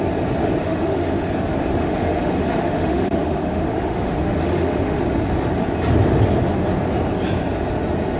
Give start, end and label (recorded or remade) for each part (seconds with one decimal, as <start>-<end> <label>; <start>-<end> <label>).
0.0-0.6 recorded; 0.6-1.3 remade; 1.3-1.8 recorded; 1.8-5.0 remade; 5.0-8.2 recorded